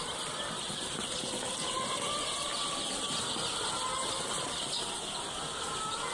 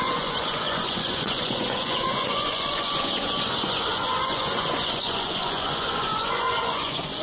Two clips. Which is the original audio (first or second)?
first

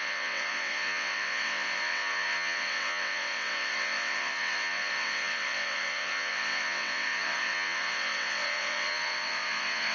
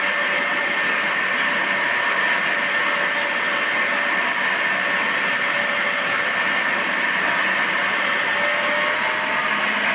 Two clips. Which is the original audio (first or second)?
second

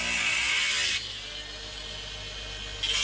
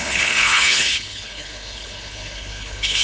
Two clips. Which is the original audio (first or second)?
first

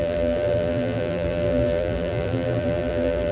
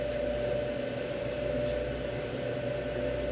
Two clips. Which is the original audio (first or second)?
second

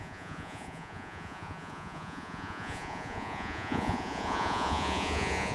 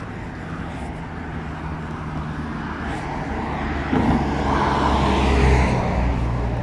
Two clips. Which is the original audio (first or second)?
second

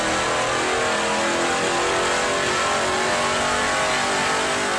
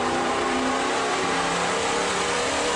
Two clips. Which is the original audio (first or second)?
first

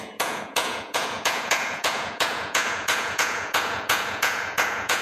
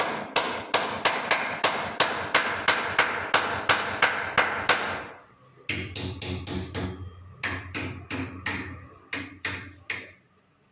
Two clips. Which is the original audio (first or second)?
second